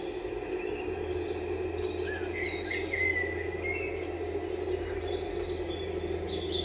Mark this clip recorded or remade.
recorded